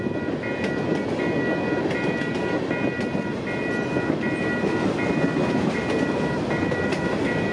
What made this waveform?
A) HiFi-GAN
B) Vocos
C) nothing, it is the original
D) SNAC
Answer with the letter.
C